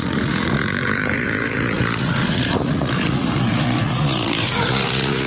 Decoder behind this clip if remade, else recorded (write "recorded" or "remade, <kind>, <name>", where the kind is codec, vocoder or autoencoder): remade, vocoder, Vocos